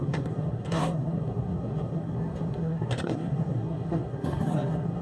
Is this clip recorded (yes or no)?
no